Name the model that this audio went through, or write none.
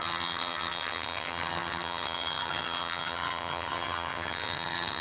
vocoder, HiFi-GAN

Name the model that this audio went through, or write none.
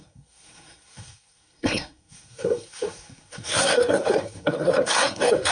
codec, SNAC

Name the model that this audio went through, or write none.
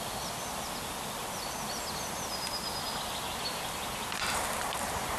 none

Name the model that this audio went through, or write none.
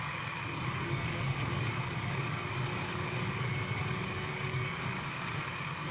codec, DAC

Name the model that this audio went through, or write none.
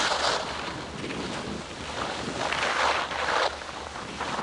none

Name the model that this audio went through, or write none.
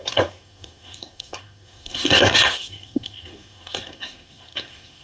codec, SNAC